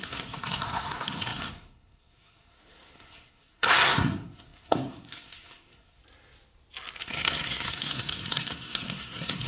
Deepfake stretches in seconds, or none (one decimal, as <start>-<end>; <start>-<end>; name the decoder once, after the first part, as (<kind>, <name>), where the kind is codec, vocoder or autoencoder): 0.0-6.0 (codec, SNAC); 7.0-9.5